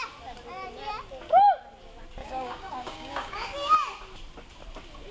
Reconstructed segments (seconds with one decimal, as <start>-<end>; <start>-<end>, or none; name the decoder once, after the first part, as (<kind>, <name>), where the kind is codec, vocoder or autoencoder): 2.2-3.7 (codec, DAC)